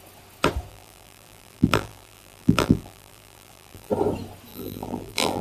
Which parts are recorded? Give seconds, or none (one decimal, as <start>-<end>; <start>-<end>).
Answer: 0.0-0.7; 3.9-4.5